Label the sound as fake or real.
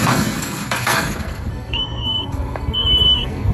fake